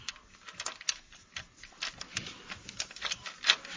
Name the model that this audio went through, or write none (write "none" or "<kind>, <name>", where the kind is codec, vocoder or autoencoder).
none